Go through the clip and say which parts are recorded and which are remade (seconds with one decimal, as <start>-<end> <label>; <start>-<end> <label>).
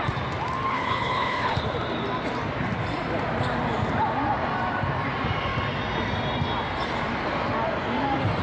0.0-0.7 recorded; 0.7-1.6 remade; 1.6-8.4 recorded